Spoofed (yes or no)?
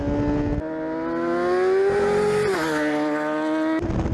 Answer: no